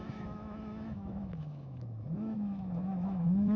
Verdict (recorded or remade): remade